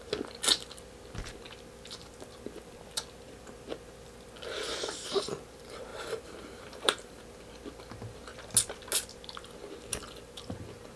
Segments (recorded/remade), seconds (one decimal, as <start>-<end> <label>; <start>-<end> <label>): 0.0-5.9 recorded; 5.9-7.2 remade; 7.2-11.0 recorded